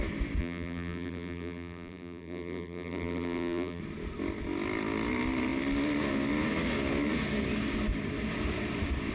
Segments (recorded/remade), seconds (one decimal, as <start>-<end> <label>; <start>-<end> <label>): 0.0-0.4 recorded; 0.4-3.8 remade; 3.8-9.1 recorded